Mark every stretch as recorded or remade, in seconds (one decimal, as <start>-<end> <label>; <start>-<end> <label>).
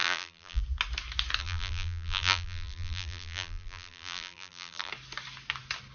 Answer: 0.0-0.6 remade; 0.6-1.4 recorded; 1.4-4.9 remade; 4.9-5.9 recorded